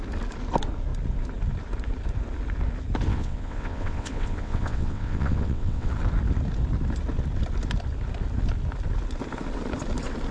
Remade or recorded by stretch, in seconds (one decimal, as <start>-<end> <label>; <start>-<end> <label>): 0.0-3.1 recorded; 3.1-5.9 remade; 5.9-10.3 recorded